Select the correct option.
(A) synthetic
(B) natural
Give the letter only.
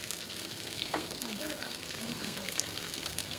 A